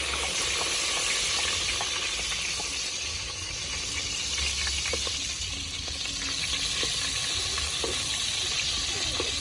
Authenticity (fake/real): real